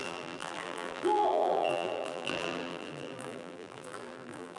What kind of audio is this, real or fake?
fake